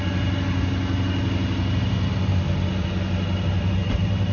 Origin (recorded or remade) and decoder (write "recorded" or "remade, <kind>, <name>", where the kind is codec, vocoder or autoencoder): recorded